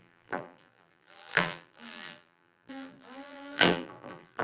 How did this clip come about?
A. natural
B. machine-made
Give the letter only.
B